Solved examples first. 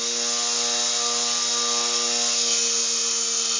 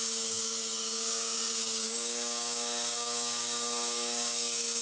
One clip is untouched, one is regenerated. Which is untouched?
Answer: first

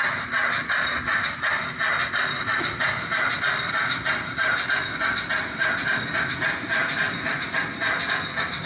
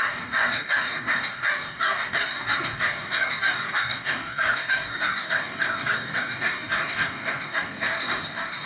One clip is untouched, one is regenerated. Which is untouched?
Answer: first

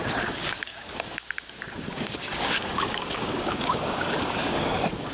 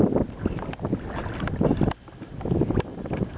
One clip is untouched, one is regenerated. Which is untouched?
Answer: second